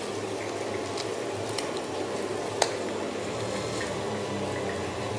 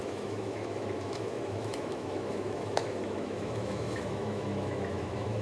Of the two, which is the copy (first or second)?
second